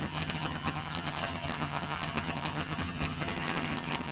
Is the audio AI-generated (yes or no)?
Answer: yes